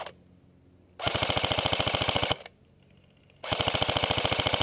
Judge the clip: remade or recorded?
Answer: recorded